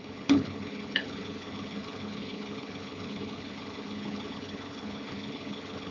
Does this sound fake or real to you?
fake